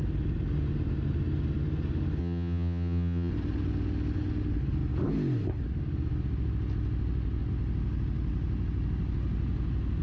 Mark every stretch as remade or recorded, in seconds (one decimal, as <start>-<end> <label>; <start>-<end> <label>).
0.0-2.2 recorded; 2.2-3.3 remade; 3.3-10.0 recorded